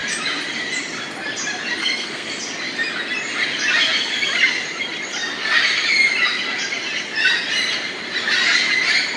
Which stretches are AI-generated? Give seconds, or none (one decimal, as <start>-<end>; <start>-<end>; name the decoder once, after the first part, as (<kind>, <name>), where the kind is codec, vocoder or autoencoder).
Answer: 1.8-2.3 (codec, SNAC)